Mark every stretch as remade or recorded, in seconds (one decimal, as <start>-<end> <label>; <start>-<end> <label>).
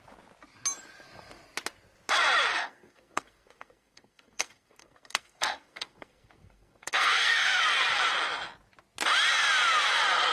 0.0-2.5 recorded; 2.5-7.6 remade; 7.6-10.3 recorded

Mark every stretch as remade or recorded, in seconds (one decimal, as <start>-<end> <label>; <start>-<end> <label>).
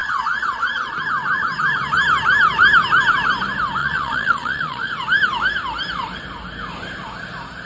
0.0-0.9 remade; 0.9-3.8 recorded; 3.8-4.9 remade; 4.9-7.7 recorded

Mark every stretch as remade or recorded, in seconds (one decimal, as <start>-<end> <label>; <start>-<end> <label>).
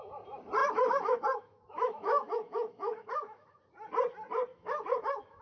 0.0-0.6 recorded; 0.6-3.6 remade; 3.6-4.5 recorded; 4.5-5.4 remade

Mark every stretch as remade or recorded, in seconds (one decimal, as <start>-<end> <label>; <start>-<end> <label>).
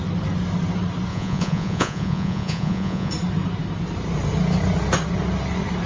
0.0-1.1 recorded; 1.1-3.1 remade; 3.1-5.9 recorded